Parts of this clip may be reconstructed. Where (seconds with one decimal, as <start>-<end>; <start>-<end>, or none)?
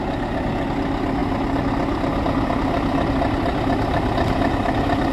none